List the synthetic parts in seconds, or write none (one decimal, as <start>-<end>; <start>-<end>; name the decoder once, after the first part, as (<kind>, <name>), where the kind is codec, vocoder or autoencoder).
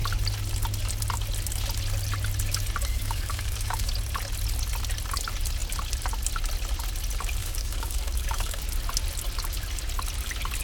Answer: 2.9-3.9 (codec, DAC); 7.4-8.6